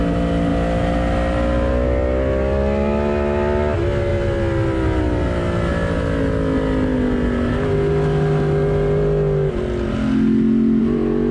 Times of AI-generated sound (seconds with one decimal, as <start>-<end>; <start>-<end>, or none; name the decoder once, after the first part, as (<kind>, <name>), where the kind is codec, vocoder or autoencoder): none